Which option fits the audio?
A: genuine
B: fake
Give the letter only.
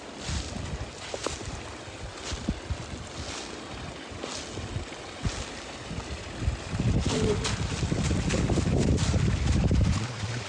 A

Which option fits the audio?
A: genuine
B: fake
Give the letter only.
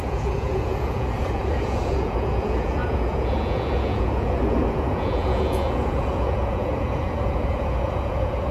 B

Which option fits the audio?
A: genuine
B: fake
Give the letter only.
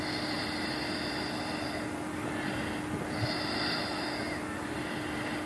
A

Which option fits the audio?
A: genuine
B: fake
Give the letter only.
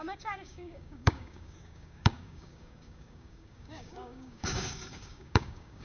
B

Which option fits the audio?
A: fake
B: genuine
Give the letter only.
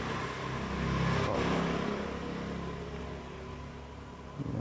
B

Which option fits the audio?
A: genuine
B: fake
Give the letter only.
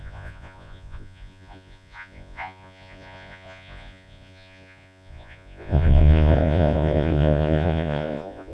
B